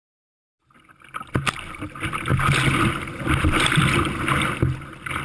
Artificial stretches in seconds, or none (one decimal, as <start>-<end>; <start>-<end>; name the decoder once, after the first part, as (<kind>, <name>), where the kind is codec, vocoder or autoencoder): none